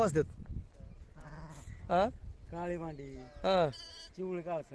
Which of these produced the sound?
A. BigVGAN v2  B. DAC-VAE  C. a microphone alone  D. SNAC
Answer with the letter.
C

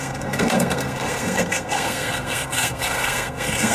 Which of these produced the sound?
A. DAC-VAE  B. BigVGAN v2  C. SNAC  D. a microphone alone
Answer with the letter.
C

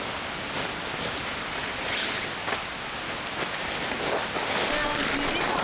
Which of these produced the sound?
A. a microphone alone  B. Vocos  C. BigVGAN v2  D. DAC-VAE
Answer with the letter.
A